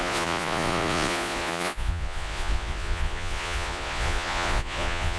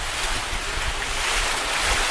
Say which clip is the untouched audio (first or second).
second